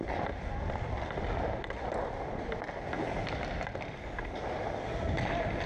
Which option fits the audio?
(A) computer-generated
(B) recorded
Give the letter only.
B